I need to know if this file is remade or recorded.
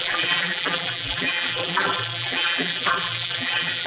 remade